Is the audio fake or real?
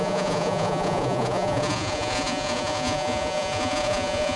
fake